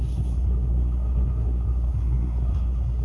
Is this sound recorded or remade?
remade